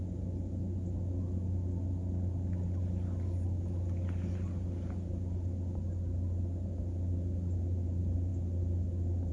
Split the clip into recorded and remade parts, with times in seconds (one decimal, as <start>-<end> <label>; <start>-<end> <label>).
0.0-9.3 recorded